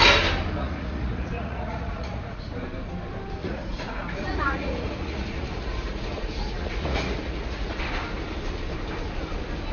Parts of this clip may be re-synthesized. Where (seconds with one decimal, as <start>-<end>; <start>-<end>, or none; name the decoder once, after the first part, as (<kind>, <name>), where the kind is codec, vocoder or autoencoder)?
0.6-2.4 (vocoder, Vocos); 3.4-7.8